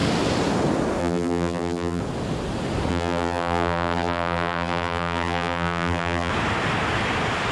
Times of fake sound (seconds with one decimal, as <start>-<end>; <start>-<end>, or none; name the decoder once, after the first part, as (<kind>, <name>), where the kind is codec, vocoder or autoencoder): 1.0-2.0 (vocoder, BigVGAN v2); 2.9-6.3